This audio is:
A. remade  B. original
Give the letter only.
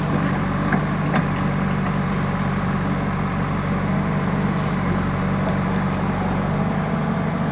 B